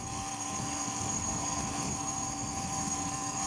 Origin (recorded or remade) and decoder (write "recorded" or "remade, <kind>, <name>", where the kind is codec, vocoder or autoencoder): remade, codec, SNAC